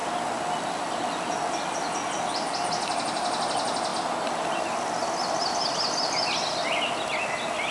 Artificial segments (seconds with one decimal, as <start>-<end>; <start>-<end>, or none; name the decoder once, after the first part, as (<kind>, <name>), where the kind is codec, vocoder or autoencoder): none